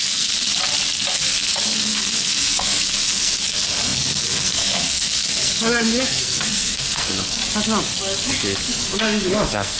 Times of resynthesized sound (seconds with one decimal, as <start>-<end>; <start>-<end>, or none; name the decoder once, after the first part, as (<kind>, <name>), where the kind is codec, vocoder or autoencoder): 0.0-0.5 (codec, SNAC); 1.1-7.4; 8.6-9.8